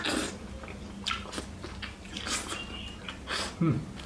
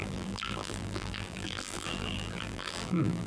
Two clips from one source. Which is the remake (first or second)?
second